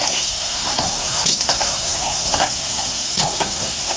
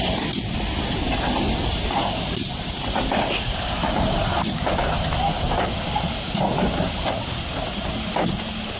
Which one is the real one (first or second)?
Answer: second